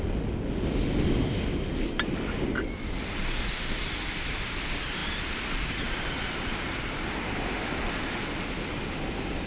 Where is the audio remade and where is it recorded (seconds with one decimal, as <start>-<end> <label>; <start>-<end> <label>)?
0.0-9.5 recorded